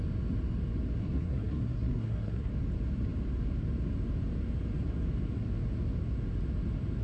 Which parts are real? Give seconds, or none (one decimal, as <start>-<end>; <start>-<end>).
0.0-1.0; 2.5-7.0